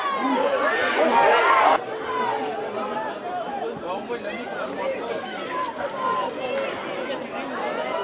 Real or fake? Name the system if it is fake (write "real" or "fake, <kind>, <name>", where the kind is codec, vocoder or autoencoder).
real